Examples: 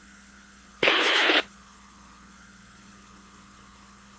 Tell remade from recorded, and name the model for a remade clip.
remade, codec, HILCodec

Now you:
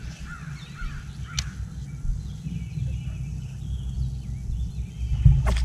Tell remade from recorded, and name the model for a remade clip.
recorded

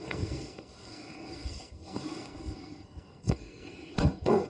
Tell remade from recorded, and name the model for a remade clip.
remade, codec, SNAC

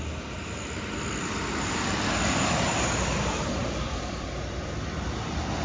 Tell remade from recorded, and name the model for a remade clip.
recorded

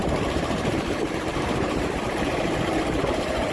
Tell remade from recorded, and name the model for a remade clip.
remade, vocoder, BigVGAN v2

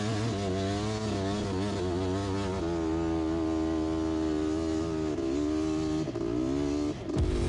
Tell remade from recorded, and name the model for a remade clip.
recorded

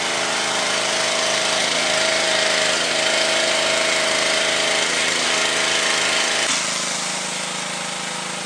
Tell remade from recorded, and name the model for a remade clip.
recorded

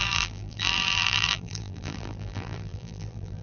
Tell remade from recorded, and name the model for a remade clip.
remade, vocoder, BigVGAN v2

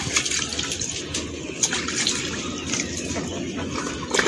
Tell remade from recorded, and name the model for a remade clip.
remade, vocoder, BigVGAN v2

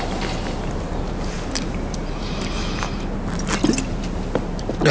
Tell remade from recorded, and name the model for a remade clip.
recorded